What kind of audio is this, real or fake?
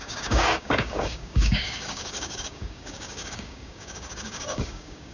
fake